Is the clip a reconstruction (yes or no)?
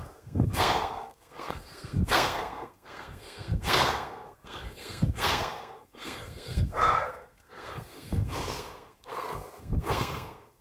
yes